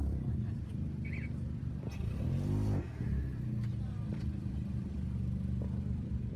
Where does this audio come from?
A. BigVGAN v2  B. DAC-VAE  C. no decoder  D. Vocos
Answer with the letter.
A